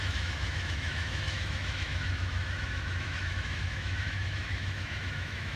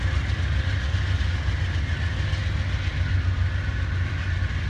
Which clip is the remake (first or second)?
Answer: first